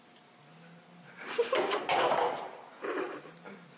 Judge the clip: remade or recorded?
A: recorded